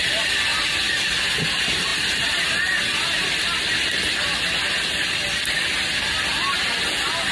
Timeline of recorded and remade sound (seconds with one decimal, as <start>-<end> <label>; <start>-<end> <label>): 0.0-7.3 recorded